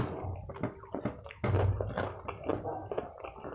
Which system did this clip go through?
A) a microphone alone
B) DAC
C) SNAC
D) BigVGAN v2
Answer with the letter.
A